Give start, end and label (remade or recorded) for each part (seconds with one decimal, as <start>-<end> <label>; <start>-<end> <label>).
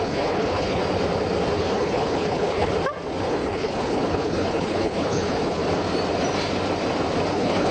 0.0-0.8 remade; 0.8-1.6 recorded; 1.6-2.7 remade; 2.7-3.2 recorded; 3.2-5.6 remade; 5.6-7.3 recorded; 7.3-7.7 remade